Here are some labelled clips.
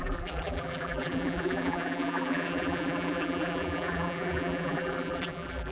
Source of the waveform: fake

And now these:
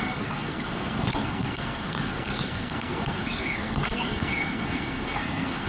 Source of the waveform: fake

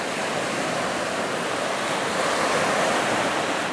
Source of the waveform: real